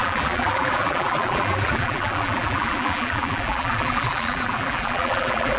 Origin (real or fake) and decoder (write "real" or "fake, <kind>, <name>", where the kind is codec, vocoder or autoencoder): fake, vocoder, BigVGAN v2